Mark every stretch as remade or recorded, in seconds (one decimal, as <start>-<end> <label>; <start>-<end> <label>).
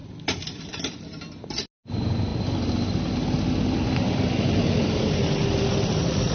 0.0-6.3 recorded